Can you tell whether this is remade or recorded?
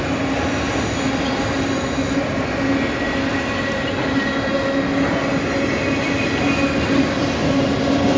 recorded